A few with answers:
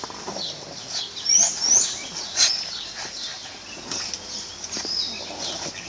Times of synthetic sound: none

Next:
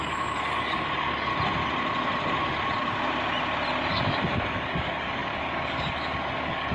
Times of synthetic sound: 0.0-1.3 (codec, DAC); 3.9-6.7

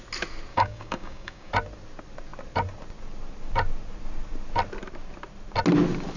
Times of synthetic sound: 0.5-1.5 (codec, DAC)

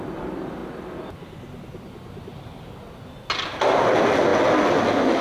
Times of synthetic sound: none

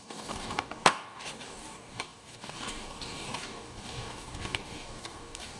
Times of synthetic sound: 0.0-5.6 (codec, DAC)

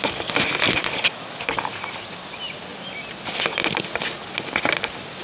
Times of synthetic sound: 0.8-1.8 (codec, DAC)

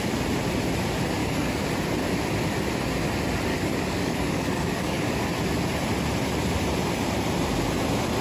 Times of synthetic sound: 1.2-1.7 (codec, DAC); 3.5-5.2